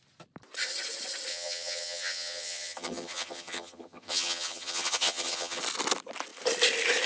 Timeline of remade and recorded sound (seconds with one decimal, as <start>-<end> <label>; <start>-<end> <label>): 0.0-1.3 recorded; 1.3-5.6 remade; 5.6-7.1 recorded